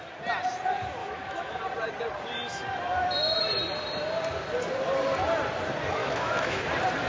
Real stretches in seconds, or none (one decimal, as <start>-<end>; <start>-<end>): 0.0-1.0; 1.6-6.0; 6.6-7.1